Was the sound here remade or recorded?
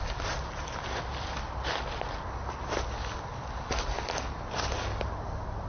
recorded